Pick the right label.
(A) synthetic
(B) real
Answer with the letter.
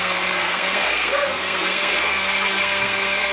A